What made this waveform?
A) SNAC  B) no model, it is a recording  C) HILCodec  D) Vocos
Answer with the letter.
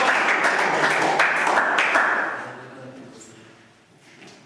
B